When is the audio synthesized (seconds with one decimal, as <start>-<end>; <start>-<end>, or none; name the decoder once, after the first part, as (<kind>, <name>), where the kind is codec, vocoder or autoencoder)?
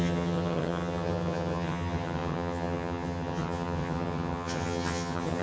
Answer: 0.0-5.4 (vocoder, HiFi-GAN)